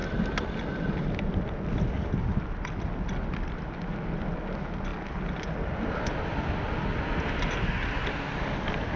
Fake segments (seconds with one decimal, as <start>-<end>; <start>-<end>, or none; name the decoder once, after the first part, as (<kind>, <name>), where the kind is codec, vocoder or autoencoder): none

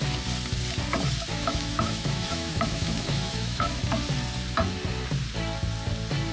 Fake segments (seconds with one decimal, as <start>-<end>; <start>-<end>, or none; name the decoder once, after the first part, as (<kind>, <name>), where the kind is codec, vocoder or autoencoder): 1.3-3.8 (autoencoder, DAC-VAE)